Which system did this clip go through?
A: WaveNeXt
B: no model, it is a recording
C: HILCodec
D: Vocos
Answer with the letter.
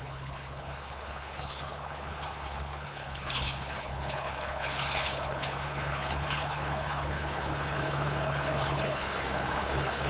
C